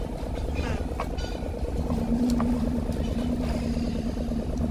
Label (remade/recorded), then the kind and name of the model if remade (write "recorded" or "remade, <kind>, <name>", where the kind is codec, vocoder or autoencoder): recorded